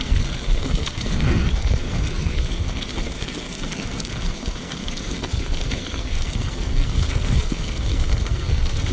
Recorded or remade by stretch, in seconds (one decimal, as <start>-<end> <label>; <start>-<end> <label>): 0.0-8.9 remade